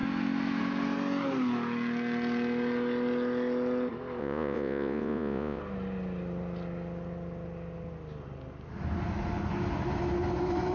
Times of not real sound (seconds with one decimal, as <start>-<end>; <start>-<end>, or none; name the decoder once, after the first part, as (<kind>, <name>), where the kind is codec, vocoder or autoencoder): 4.2-5.6 (vocoder, Vocos)

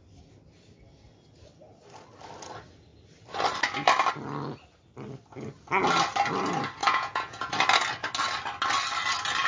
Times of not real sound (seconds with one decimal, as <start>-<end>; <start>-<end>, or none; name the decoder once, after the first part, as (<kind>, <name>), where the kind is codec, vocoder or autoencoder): 6.8-7.5 (vocoder, Vocos)

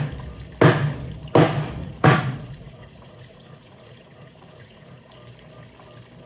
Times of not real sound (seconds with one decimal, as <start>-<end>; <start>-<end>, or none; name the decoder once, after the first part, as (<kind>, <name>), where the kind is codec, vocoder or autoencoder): 1.8-5.1 (vocoder, Vocos)

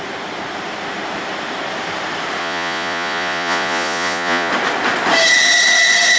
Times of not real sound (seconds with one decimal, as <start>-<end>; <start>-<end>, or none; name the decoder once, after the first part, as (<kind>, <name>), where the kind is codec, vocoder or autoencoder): 2.4-4.5 (vocoder, Vocos)

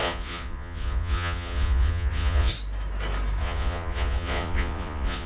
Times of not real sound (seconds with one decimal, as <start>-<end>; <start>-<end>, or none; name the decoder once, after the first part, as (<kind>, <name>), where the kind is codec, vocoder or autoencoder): 0.0-2.5 (vocoder, Vocos); 3.4-5.3

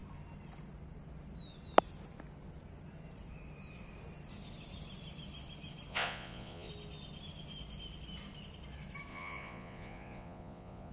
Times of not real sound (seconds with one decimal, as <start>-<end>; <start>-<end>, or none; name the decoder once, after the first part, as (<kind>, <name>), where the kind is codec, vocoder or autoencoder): 5.9-6.7 (vocoder, Vocos); 9.1-10.9

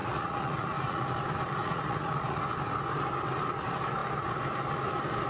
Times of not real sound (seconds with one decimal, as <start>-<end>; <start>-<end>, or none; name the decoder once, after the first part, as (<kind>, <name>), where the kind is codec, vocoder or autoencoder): 0.0-1.1 (vocoder, Vocos); 1.6-2.4